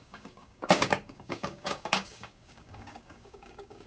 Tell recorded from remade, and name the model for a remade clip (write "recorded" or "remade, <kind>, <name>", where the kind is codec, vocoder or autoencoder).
remade, codec, DAC